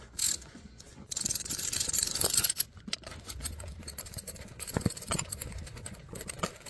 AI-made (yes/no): yes